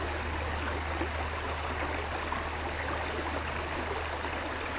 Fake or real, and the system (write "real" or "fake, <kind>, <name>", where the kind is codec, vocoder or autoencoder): real